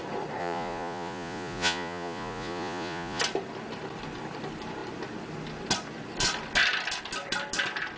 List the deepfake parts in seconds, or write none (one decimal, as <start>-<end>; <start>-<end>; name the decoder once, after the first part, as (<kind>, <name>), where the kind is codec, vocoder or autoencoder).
0.4-3.2 (vocoder, Vocos)